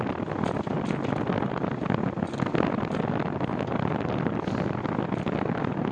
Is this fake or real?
real